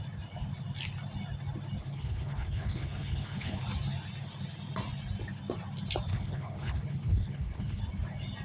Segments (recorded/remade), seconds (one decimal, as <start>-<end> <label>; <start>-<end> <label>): 0.0-1.8 recorded; 1.8-3.6 remade; 3.6-6.1 recorded; 6.1-7.8 remade; 7.8-8.4 recorded